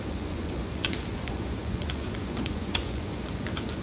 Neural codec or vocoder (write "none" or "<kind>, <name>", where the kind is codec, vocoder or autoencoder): vocoder, Vocos